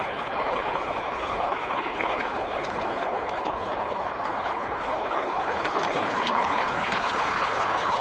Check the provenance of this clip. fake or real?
fake